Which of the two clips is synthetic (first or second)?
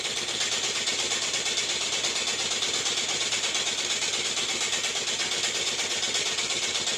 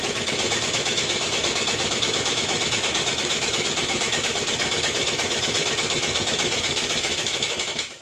second